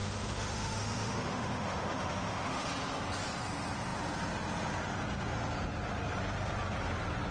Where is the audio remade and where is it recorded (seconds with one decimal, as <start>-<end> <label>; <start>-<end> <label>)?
0.0-2.7 remade; 2.7-7.3 recorded